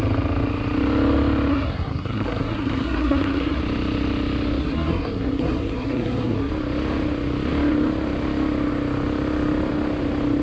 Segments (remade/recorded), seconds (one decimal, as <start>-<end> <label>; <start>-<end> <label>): 0.0-1.5 recorded; 1.5-3.6 remade; 3.6-4.6 recorded; 4.6-6.5 remade; 6.5-10.4 recorded